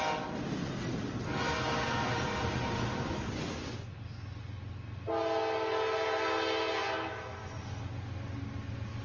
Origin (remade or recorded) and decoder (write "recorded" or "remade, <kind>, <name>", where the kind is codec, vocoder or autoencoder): recorded